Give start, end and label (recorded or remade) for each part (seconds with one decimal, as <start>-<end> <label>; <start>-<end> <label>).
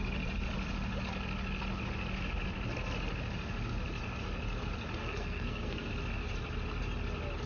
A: 0.0-5.0 recorded; 5.0-5.9 remade; 5.9-7.5 recorded